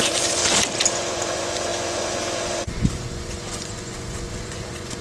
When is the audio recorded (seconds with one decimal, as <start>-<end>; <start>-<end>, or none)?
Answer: 0.4-0.9